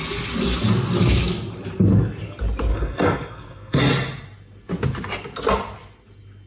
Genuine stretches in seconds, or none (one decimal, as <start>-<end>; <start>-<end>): 0.0-2.7; 3.8-6.5